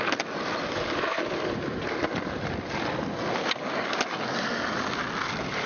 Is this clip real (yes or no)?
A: yes